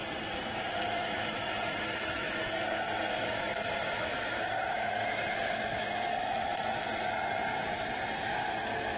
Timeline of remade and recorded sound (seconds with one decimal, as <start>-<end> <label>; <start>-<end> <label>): 0.0-0.9 recorded; 0.9-2.4 remade; 2.4-3.1 recorded; 3.1-6.5 remade; 6.5-8.6 recorded; 8.6-9.0 remade